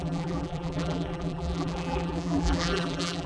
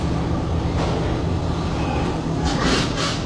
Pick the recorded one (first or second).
second